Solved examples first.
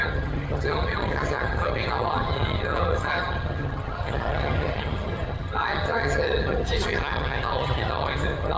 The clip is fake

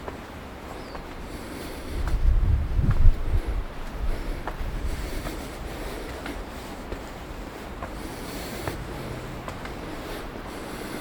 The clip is fake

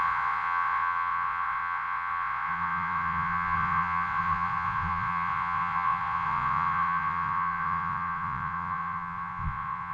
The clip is fake